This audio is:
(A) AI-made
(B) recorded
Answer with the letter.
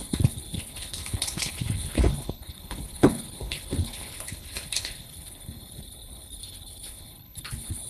A